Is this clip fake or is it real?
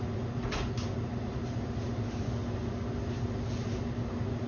real